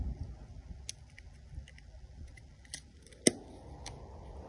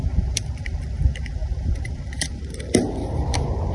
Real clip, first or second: first